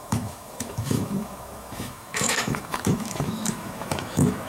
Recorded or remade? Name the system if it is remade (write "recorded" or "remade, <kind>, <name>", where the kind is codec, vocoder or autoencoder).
remade, autoencoder, DAC-VAE